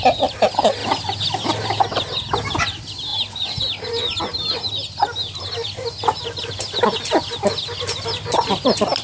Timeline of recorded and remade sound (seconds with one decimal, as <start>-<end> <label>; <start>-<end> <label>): 0.0-9.0 recorded